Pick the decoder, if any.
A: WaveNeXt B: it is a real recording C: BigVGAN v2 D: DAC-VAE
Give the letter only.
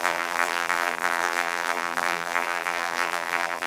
C